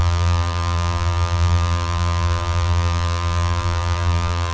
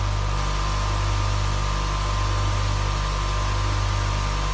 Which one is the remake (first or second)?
first